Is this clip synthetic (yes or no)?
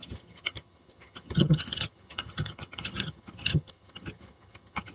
yes